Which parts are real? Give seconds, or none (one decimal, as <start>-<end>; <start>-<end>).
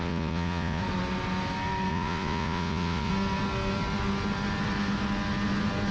0.8-1.9; 3.1-5.9